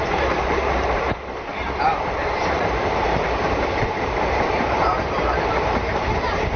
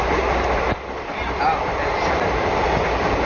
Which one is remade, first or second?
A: first